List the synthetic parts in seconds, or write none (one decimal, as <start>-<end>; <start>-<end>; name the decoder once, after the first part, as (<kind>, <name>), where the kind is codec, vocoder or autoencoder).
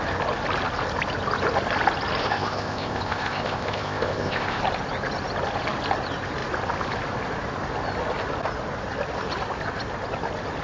2.2-4.6 (codec, ZipCodec)